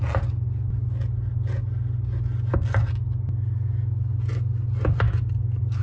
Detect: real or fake real